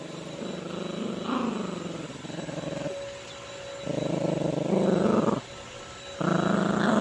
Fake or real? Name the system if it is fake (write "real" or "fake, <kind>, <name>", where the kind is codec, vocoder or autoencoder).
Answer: real